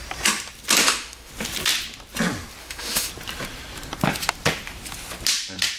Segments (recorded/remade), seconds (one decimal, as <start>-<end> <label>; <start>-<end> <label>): 0.0-0.8 recorded; 0.8-1.3 remade; 1.3-2.6 recorded; 2.6-3.1 remade; 3.1-5.8 recorded